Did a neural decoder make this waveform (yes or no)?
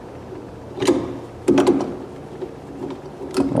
no